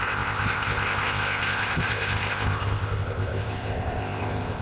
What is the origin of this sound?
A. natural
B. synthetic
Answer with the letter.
B